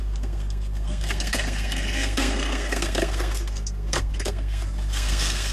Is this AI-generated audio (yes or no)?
yes